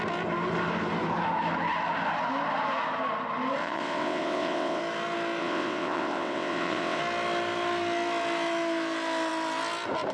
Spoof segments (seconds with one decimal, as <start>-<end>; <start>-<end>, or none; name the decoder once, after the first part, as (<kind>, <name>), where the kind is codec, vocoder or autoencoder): 3.6-4.8 (vocoder, WaveNeXt); 5.4-7.0